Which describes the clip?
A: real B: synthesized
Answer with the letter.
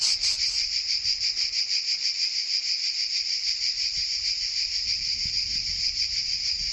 B